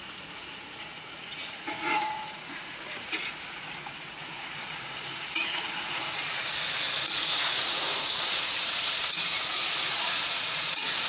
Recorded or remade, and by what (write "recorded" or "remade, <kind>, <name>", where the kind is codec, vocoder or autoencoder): remade, vocoder, Vocos